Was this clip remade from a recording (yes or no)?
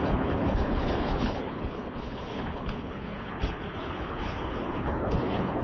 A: yes